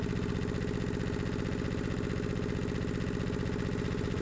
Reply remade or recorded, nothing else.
recorded